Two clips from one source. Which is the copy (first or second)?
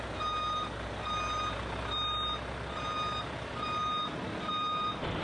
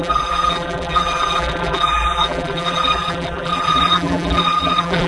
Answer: second